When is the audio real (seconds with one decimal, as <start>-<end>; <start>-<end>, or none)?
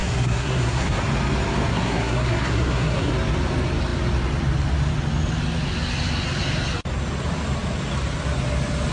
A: 1.0-1.7; 3.1-8.9